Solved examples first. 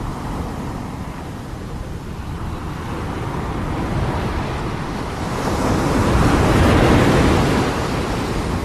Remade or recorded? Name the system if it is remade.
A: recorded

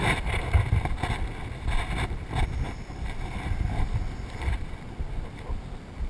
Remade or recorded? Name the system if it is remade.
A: recorded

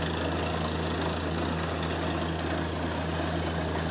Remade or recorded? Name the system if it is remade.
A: recorded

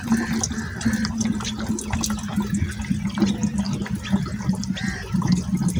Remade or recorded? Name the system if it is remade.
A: recorded